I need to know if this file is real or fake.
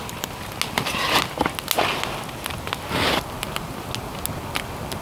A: real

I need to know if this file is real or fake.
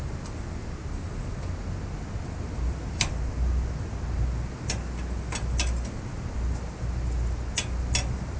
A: real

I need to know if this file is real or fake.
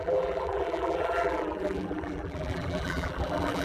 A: fake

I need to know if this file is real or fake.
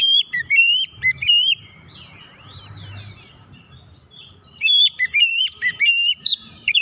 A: fake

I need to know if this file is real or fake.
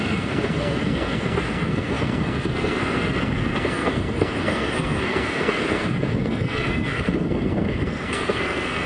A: fake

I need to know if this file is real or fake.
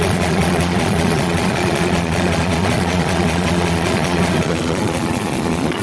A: fake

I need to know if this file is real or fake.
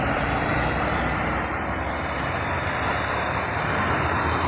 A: fake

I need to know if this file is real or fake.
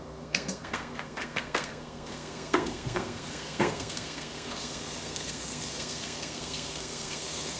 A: fake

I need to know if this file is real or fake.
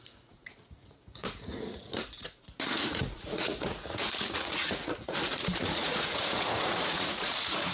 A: fake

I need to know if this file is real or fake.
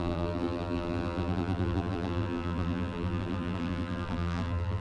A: fake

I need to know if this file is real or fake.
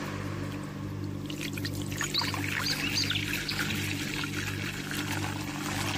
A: real